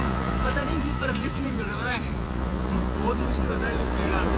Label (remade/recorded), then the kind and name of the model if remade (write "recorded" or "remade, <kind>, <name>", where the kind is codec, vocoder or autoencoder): remade, vocoder, Vocos